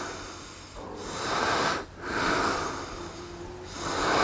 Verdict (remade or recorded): recorded